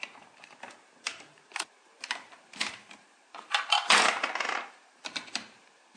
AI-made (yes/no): yes